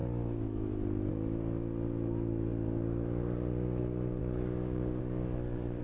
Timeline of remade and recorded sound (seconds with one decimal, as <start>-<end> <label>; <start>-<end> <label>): 0.0-4.2 recorded; 4.2-5.0 remade; 5.0-5.8 recorded